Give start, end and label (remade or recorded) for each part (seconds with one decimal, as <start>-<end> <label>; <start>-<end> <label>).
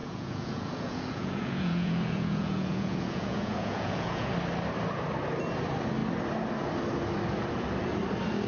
0.0-4.3 remade; 4.3-8.5 recorded